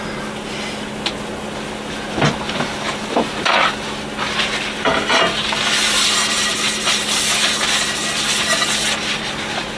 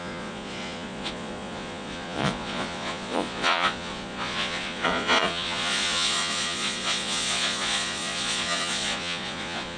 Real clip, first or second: first